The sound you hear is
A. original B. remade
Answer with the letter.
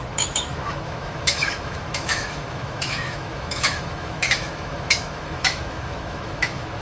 B